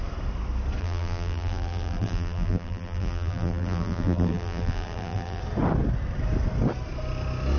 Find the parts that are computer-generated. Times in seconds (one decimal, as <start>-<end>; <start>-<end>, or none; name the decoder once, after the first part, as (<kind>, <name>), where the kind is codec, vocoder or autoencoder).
0.8-5.4 (vocoder, BigVGAN v2)